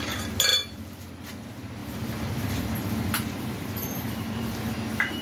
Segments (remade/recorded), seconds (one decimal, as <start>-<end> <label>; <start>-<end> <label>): 0.0-0.5 recorded; 0.5-1.3 remade; 1.3-1.8 recorded; 1.8-4.7 remade; 4.7-5.2 recorded